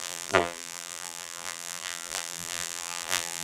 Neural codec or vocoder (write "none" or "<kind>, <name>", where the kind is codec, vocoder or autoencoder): vocoder, BigVGAN v2